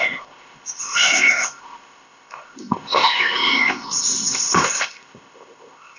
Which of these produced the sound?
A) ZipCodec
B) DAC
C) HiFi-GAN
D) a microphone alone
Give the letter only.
A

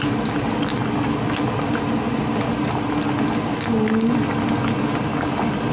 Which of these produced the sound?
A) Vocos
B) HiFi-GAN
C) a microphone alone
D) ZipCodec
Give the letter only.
C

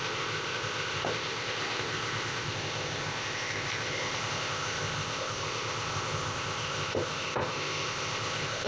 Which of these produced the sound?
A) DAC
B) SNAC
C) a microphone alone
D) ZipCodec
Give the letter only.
D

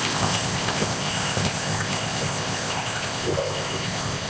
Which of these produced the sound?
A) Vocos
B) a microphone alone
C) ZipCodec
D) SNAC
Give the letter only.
C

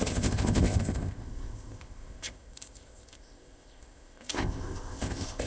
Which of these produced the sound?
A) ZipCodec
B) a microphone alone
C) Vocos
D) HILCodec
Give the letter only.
A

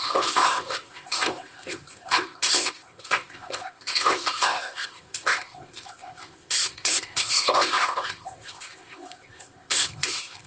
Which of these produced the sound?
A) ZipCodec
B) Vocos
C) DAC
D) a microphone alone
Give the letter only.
A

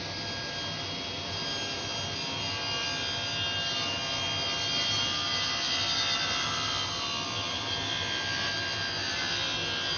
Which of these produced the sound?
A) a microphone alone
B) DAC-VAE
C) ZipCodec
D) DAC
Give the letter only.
A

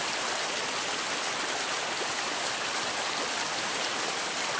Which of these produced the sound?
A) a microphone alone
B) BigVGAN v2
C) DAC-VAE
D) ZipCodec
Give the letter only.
A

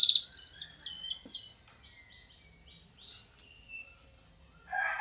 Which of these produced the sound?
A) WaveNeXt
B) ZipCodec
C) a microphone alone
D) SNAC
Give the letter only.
C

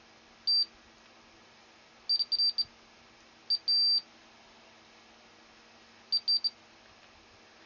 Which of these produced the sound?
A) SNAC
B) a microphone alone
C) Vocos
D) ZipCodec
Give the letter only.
B